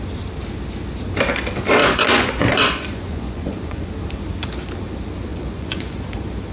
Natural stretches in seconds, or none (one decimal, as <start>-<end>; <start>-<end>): 0.0-1.8; 3.9-5.3; 6.0-6.5